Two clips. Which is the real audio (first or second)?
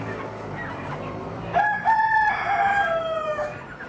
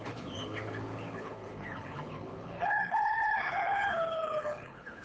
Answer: first